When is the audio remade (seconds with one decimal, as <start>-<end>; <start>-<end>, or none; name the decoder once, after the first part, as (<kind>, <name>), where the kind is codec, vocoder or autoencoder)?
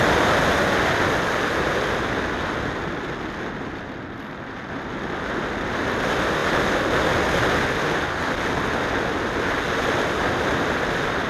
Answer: none